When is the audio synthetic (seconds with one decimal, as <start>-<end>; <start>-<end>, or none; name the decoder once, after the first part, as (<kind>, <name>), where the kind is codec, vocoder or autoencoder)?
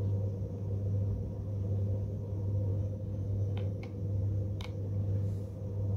2.7-3.8 (codec, DAC)